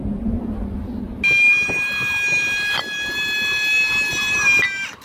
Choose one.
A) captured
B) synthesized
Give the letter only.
A